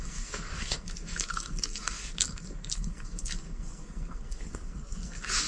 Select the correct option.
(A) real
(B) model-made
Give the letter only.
B